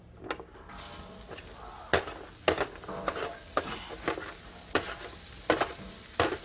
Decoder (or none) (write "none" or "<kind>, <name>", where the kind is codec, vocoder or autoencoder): none